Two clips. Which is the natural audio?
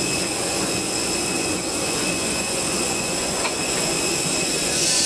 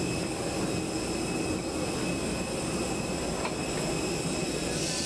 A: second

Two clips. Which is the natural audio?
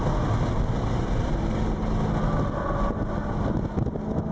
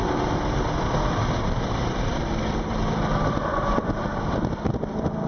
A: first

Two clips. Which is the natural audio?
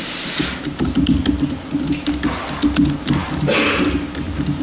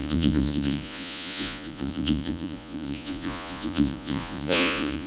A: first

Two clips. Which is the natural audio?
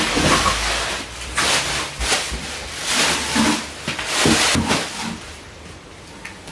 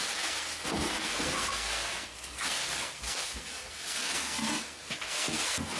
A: first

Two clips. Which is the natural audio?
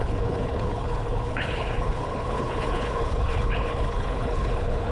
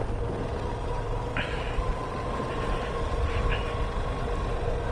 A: second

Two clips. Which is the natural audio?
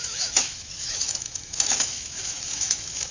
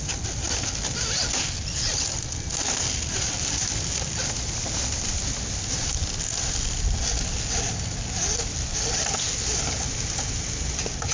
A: second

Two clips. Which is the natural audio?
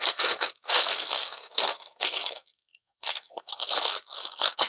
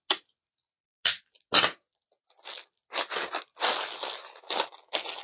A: second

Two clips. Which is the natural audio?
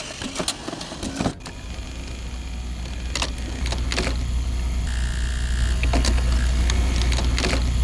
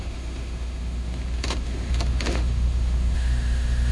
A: first